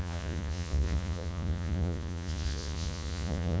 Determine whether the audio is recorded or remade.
remade